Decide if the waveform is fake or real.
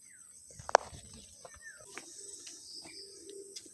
real